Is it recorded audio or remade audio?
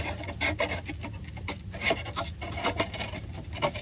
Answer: recorded